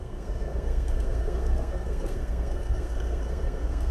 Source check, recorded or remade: remade